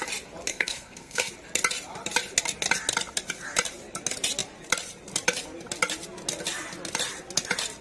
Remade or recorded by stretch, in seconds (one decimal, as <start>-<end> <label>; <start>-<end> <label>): 0.0-0.5 recorded; 0.5-1.3 remade; 1.3-7.8 recorded